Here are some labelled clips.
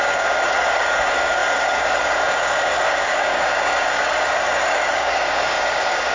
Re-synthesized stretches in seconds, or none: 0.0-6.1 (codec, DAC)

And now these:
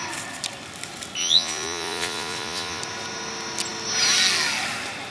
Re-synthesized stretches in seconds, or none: 1.2-2.8 (vocoder, Vocos)

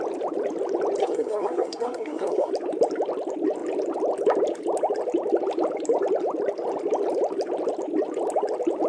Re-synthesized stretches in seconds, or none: 1.0-2.5 (codec, SNAC)

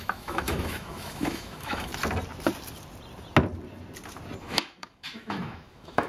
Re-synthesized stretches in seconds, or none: 0.0-1.9 (autoencoder, DAC-VAE); 4.4-6.1

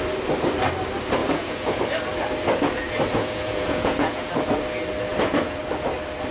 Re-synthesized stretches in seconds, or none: 1.2-1.8 (vocoder, Vocos); 3.2-4.3; 5.1-5.6

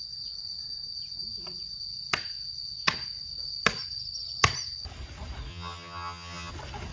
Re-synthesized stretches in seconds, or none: 5.5-6.5 (vocoder, HiFi-GAN)